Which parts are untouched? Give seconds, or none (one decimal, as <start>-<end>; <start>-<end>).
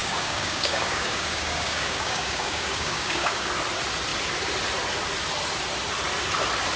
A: 3.5-6.8